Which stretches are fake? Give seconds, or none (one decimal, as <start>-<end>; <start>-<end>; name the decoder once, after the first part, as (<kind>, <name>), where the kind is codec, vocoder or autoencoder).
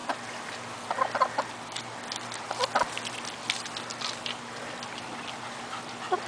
none